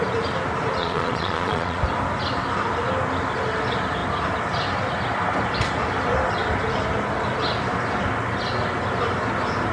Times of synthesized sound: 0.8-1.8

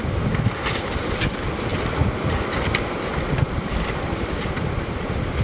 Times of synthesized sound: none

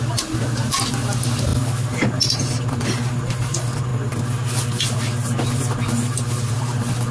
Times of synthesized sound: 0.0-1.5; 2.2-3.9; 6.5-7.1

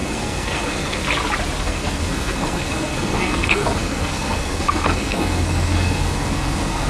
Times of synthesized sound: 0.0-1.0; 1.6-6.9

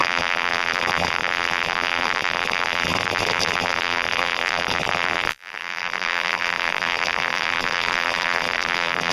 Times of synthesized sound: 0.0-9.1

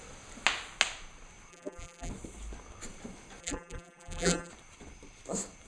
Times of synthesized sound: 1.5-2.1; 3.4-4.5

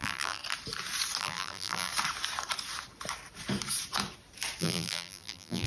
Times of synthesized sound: 0.0-0.4; 1.2-1.9; 4.6-5.7